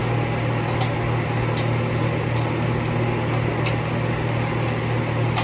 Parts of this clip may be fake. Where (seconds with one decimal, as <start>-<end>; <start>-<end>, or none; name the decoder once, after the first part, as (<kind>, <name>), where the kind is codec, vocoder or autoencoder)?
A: none

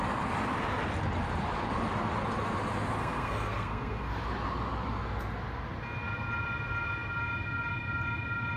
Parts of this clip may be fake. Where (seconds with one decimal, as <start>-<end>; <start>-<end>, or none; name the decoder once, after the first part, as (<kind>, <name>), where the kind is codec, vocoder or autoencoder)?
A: 3.0-4.1 (codec, SNAC)